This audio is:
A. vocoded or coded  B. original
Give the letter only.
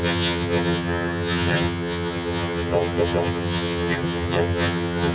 A